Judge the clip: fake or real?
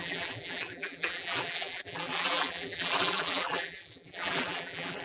fake